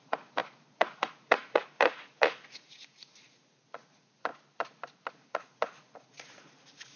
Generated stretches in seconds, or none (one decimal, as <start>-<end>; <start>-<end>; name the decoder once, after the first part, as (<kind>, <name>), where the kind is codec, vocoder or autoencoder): 0.0-4.3 (vocoder, Vocos); 5.1-7.0